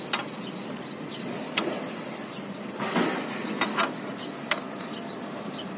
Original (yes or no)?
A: yes